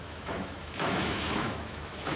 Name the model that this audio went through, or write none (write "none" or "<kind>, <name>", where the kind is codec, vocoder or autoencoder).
autoencoder, DAC-VAE